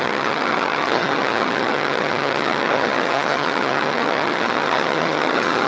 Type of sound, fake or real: fake